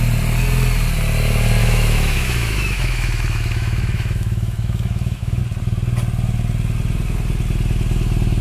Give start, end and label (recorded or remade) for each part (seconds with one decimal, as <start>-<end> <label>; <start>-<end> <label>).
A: 0.0-1.6 recorded; 1.6-5.4 remade; 5.4-8.4 recorded